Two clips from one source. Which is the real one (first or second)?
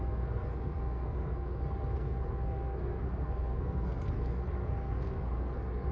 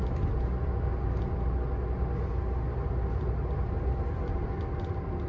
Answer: second